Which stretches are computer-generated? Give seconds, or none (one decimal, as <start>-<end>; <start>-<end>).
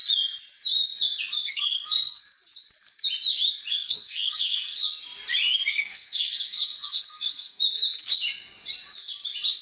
1.3-2.2; 3.7-4.8; 5.7-7.6